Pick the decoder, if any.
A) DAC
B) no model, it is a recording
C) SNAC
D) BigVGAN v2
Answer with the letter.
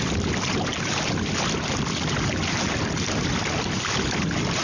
B